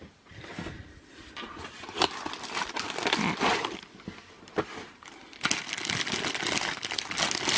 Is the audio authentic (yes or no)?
yes